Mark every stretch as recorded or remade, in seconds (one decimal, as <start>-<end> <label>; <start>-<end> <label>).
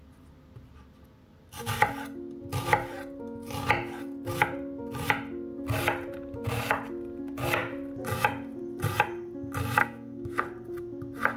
0.0-9.8 recorded; 9.8-10.4 remade; 10.4-11.4 recorded